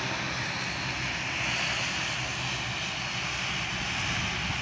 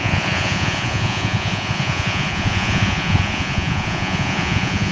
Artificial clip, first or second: second